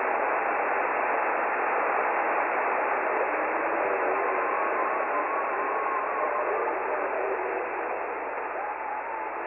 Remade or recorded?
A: recorded